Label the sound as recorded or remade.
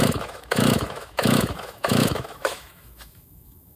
remade